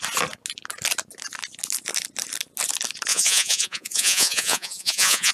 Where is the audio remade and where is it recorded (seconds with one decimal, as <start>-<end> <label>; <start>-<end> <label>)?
0.0-3.1 recorded; 3.1-5.3 remade